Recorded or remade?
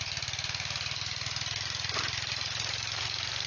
recorded